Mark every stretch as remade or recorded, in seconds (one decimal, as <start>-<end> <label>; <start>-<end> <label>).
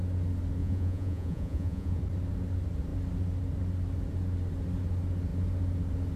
0.0-0.6 recorded; 0.6-2.0 remade; 2.0-6.2 recorded